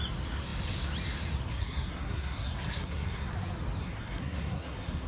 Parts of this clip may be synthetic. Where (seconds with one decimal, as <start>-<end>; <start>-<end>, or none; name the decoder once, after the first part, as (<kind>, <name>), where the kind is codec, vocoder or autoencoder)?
1.5-3.3 (codec, SNAC); 3.8-5.1